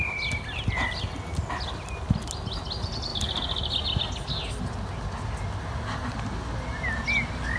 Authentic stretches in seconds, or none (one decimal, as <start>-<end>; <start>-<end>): 0.0-7.6